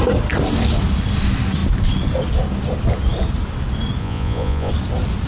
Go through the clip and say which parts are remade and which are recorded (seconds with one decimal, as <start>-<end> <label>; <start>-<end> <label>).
0.0-4.0 recorded; 4.0-4.7 remade; 4.7-5.3 recorded